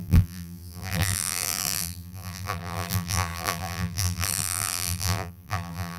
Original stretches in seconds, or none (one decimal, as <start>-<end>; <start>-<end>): none

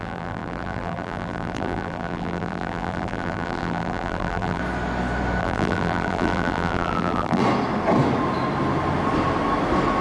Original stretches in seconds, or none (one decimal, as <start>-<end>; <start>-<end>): 4.6-5.4; 7.4-10.0

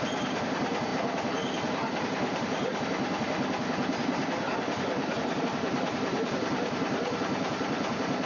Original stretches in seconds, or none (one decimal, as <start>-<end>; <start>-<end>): none

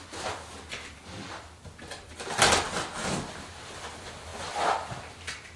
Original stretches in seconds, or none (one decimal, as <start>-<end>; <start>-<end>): 0.0-5.6

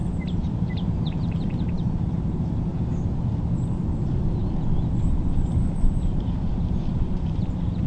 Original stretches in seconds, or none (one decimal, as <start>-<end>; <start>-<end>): 2.7-3.3; 4.4-5.0